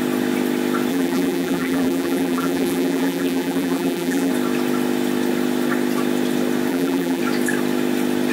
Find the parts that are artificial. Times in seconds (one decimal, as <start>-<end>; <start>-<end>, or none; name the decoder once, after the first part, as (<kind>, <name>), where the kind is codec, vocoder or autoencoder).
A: 0.9-4.3 (vocoder, BigVGAN v2); 6.7-7.2